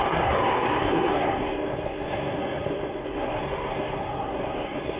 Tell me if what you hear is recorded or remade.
remade